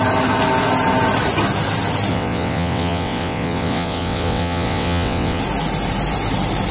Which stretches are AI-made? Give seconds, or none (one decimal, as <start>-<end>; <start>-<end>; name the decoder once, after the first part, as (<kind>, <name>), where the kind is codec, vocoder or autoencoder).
2.1-5.4 (vocoder, WaveNeXt)